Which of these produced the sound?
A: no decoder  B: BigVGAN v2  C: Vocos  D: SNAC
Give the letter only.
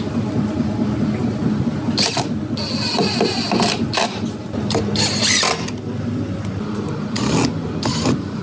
A